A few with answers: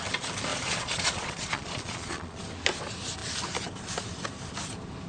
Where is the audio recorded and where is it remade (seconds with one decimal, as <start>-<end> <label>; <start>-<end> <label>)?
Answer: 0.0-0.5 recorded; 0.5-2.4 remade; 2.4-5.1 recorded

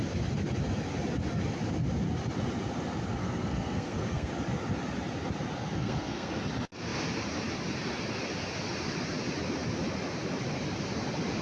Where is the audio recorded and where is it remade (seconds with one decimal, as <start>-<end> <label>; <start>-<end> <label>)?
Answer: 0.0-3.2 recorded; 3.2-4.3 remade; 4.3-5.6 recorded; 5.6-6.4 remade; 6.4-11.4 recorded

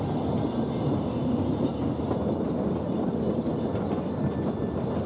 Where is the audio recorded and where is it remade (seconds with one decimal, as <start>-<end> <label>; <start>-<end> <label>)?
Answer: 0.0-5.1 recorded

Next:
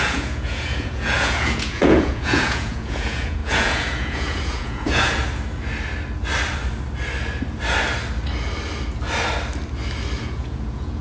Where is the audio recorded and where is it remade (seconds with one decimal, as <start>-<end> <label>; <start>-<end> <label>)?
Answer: 0.0-5.2 remade; 5.2-10.2 recorded; 10.2-11.0 remade

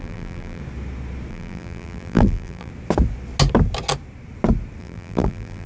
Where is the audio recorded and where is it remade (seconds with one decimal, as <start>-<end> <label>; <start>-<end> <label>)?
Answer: 0.0-0.6 remade; 0.6-1.3 recorded; 1.3-2.7 remade; 2.7-4.8 recorded; 4.8-5.7 remade

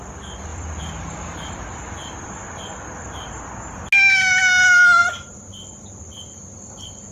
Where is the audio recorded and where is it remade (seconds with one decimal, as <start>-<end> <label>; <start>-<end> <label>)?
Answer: 0.0-0.5 recorded; 0.5-3.5 remade; 3.5-7.1 recorded

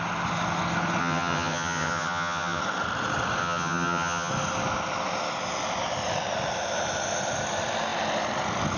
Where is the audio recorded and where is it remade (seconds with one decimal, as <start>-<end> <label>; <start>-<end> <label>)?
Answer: 0.0-1.0 recorded; 1.0-2.6 remade; 2.6-3.4 recorded; 3.4-4.3 remade; 4.3-8.8 recorded